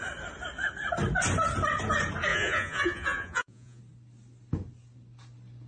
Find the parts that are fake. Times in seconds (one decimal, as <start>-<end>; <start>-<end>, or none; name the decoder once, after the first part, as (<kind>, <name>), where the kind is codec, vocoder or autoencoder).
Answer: 2.3-3.8 (vocoder, Vocos)